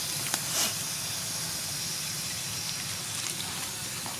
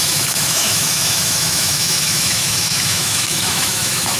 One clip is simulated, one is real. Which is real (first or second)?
first